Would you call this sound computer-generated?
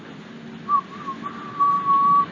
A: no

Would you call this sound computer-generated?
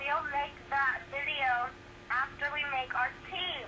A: no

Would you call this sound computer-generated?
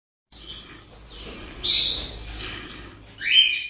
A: no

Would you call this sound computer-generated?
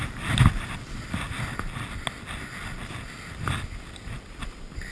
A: no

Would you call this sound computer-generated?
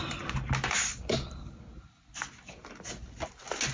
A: no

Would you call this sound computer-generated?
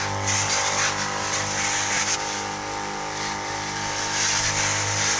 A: no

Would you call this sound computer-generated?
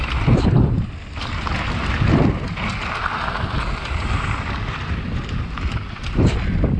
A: no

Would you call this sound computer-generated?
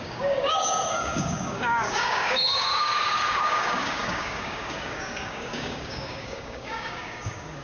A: yes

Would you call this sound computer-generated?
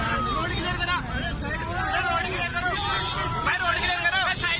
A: no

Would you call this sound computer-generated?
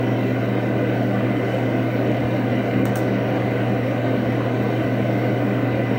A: yes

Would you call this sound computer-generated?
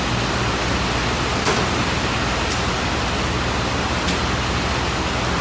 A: no